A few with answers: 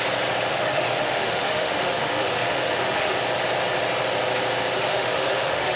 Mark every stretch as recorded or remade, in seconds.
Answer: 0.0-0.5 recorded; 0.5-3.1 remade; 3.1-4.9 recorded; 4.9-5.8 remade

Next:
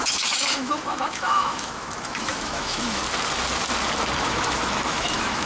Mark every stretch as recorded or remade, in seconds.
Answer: 0.0-3.0 remade; 3.0-4.2 recorded; 4.2-5.5 remade

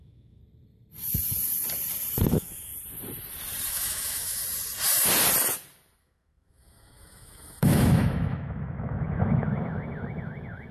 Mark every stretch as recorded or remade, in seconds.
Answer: 0.0-0.4 remade; 0.4-2.3 recorded; 2.3-2.7 remade; 2.7-3.7 recorded; 3.7-4.4 remade; 4.4-6.0 recorded; 6.0-10.7 remade

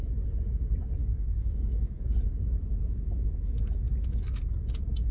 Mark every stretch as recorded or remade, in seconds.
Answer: 0.0-1.0 recorded; 1.0-2.0 remade; 2.0-2.6 recorded; 2.6-4.2 remade; 4.2-5.1 recorded

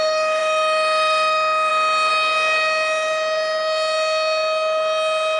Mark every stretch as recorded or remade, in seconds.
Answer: 0.0-2.1 remade; 2.1-5.4 recorded

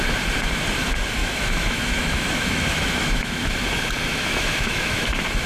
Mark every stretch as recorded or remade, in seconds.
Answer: 0.0-1.2 recorded; 1.2-3.5 remade; 3.5-4.1 recorded; 4.1-5.1 remade; 5.1-5.5 recorded

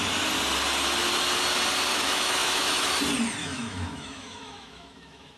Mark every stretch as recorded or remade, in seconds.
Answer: 0.0-1.9 recorded; 1.9-2.9 remade; 2.9-3.4 recorded; 3.4-5.4 remade

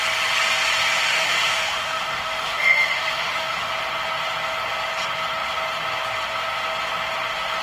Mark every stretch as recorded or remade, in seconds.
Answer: 0.0-1.1 recorded; 1.1-3.7 remade; 3.7-7.6 recorded